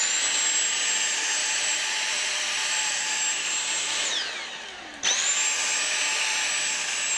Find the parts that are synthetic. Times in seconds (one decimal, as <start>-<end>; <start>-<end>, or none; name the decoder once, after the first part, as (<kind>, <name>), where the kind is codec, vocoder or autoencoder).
1.4-3.2 (vocoder, BigVGAN v2)